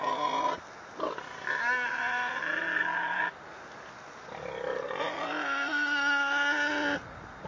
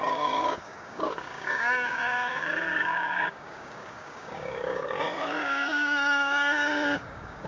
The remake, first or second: second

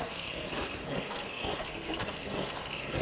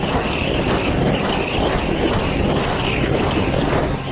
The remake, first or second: first